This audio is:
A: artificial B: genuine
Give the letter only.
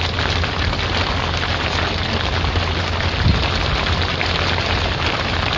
B